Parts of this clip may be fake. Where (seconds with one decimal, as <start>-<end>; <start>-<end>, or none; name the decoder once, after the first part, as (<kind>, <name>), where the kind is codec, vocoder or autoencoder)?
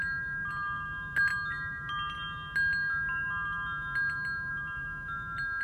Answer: none